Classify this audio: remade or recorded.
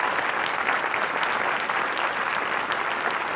recorded